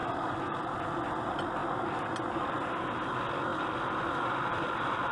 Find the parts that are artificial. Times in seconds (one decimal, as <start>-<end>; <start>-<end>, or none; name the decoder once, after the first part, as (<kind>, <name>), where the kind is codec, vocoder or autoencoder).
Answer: none